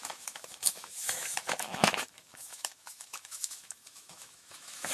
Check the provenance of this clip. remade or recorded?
remade